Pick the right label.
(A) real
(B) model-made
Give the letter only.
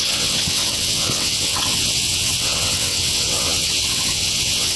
B